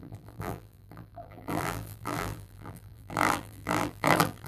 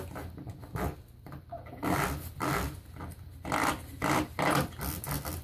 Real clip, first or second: second